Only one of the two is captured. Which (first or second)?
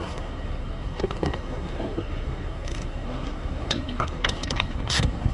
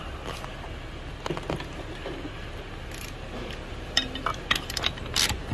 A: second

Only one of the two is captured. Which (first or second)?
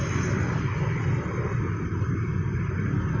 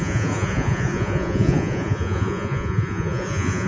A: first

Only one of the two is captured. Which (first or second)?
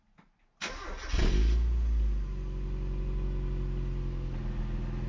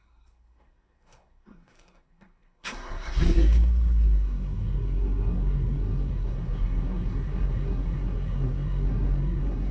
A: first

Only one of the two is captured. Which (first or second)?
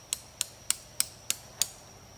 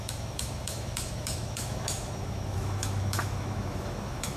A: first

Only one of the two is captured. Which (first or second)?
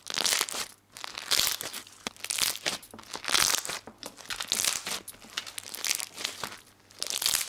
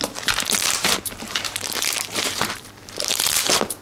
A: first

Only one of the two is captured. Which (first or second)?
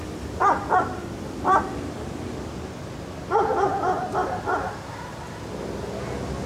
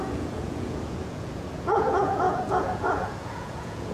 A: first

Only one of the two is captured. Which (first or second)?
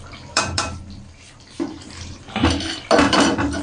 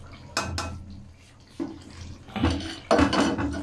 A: second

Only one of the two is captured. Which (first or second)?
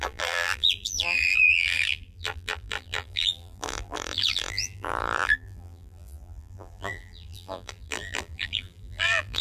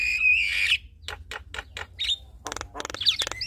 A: second